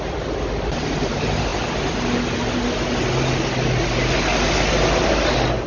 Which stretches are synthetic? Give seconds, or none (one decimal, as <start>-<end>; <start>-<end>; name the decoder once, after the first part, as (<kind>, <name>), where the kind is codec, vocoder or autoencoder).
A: none